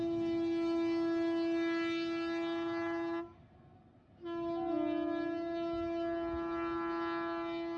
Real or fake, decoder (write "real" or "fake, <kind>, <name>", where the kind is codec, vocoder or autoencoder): real